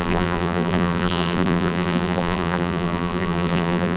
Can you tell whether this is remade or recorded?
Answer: remade